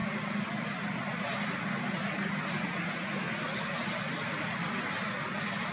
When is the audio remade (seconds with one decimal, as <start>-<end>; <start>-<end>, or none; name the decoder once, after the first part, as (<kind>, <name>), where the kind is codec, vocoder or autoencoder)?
none

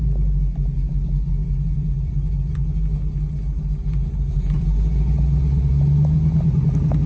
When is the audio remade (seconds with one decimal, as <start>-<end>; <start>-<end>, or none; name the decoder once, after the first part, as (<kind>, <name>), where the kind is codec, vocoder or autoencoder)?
none

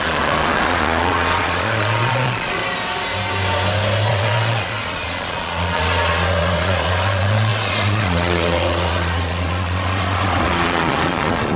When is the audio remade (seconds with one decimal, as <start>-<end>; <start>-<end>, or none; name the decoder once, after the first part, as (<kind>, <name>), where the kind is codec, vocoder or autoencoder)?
0.0-2.6 (vocoder, Vocos); 4.1-11.6

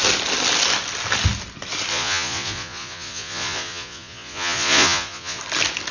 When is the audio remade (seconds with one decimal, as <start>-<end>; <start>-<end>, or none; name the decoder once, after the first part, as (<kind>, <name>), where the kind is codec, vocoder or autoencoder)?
1.9-5.4 (vocoder, Vocos)

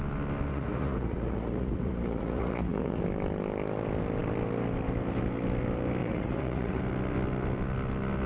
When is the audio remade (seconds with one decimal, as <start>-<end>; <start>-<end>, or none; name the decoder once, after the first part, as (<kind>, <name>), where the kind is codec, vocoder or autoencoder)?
0.5-3.0 (vocoder, Vocos); 6.0-6.8

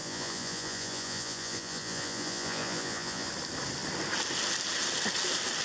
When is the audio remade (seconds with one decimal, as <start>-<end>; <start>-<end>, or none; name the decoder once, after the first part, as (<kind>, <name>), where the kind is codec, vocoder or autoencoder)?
0.0-3.3 (vocoder, Vocos)

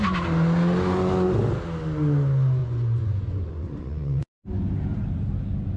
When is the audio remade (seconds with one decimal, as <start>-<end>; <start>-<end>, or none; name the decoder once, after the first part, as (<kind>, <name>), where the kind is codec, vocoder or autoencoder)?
2.6-4.4 (vocoder, Vocos)